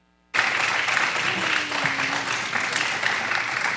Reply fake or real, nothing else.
real